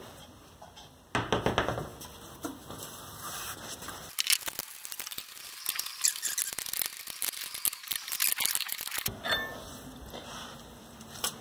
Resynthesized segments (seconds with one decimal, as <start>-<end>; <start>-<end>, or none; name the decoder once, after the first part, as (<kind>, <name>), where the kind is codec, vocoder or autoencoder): 5.9-6.4 (vocoder, BigVGAN v2)